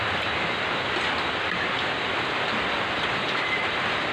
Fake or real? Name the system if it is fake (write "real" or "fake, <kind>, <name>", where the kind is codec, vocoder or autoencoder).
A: real